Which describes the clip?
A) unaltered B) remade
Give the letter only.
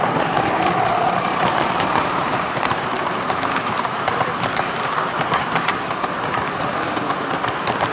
B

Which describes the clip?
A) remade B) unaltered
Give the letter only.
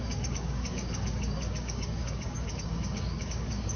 A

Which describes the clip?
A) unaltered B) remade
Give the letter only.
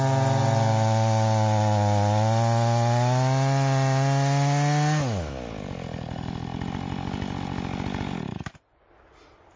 A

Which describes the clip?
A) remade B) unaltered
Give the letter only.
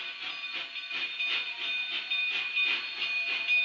B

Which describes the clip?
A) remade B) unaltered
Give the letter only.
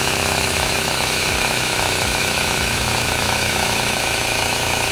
A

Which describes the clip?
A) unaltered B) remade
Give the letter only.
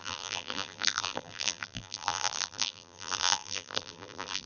B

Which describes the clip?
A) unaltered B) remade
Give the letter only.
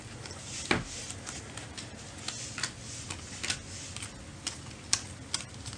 A